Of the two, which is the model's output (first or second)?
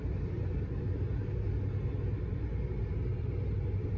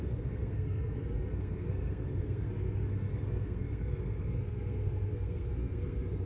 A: second